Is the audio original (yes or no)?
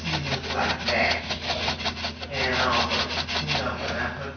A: yes